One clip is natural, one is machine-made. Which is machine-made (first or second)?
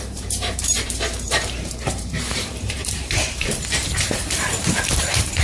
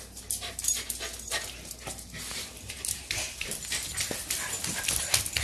first